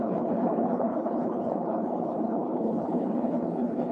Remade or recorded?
remade